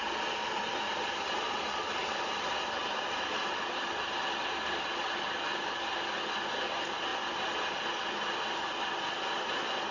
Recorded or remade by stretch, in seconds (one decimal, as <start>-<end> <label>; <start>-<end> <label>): 0.0-9.9 recorded